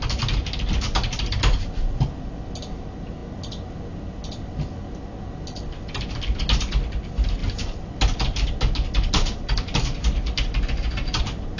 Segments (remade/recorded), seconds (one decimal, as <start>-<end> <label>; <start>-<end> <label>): 0.0-11.6 recorded